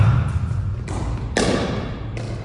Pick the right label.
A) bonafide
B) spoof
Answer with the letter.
A